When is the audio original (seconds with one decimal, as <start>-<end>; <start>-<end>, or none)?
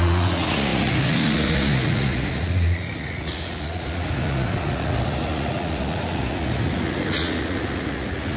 none